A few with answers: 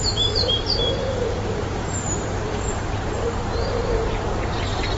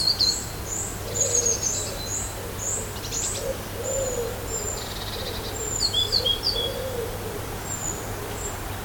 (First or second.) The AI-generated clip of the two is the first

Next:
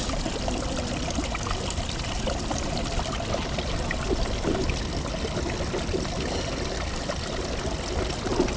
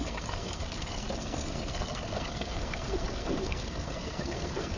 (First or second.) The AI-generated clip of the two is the second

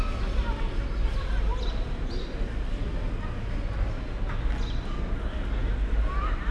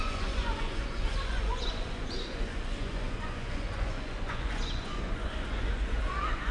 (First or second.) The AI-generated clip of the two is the second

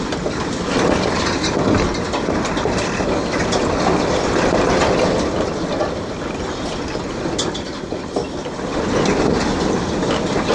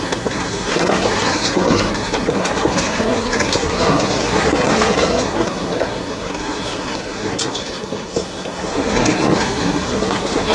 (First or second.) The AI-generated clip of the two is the second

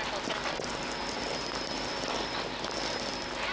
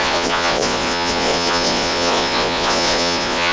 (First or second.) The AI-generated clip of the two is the second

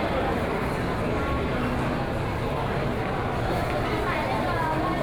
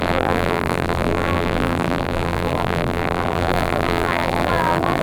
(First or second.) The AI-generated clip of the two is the second